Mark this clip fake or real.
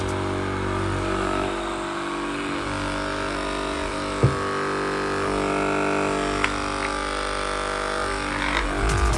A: real